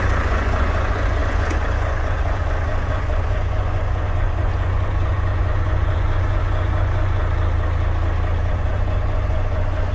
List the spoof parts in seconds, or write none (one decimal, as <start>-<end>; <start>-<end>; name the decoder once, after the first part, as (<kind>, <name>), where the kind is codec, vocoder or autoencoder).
0.0-7.2 (vocoder, Vocos); 8.5-9.9